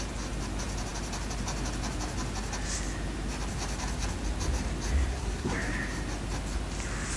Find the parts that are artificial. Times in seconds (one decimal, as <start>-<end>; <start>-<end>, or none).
5.1-5.7